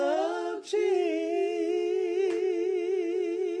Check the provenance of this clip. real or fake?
real